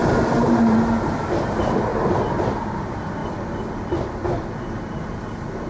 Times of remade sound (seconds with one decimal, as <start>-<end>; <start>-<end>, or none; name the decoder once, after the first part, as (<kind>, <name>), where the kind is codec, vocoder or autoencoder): 0.0-1.9 (vocoder, BigVGAN v2); 2.7-5.7